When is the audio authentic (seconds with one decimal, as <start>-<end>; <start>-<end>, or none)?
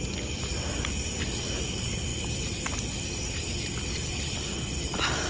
0.0-5.3